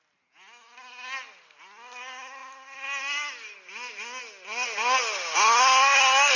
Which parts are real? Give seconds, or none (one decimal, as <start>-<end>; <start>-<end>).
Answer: 0.0-6.4